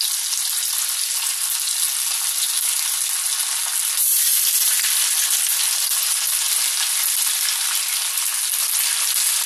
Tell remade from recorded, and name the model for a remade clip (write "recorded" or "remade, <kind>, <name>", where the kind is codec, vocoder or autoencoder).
recorded